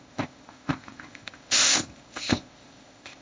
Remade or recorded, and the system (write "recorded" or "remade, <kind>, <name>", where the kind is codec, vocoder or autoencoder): remade, codec, ZipCodec